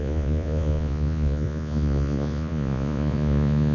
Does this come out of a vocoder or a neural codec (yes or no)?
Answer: yes